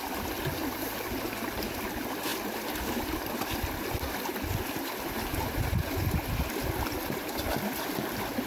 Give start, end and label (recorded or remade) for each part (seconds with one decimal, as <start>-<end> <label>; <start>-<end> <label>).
0.0-8.5 recorded